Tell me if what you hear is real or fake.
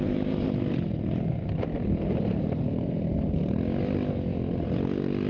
real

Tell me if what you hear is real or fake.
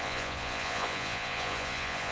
fake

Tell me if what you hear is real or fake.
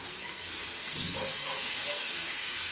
fake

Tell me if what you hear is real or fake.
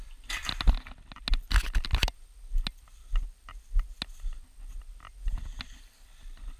real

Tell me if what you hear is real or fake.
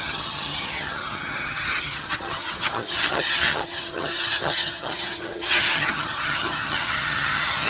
fake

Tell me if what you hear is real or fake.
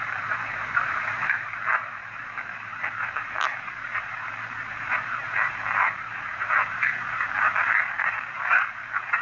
fake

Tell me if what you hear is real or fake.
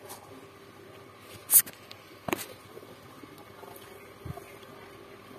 real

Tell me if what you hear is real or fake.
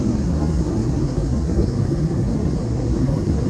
fake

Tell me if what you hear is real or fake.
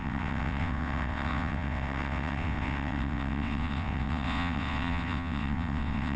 fake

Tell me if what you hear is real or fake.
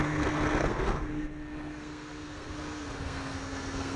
fake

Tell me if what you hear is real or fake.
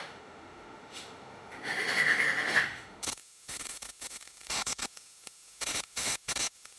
fake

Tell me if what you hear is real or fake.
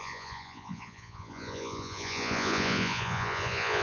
fake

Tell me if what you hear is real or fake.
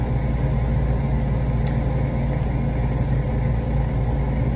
real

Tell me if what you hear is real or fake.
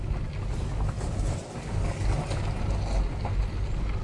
real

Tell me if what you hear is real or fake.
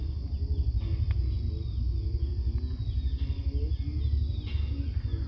real